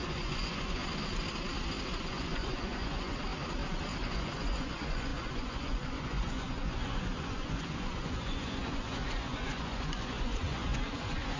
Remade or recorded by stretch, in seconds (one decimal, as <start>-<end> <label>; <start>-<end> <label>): 0.0-0.8 remade; 0.8-2.1 recorded; 2.1-3.2 remade; 3.2-4.0 recorded; 4.0-11.4 remade